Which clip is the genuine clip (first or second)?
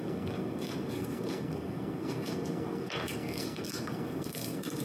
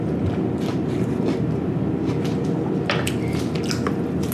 second